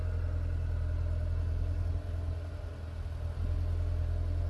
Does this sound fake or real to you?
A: real